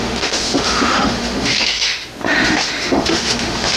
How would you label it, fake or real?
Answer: fake